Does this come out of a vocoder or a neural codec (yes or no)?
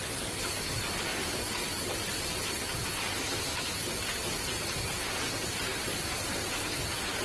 no